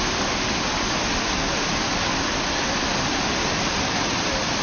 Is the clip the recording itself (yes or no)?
yes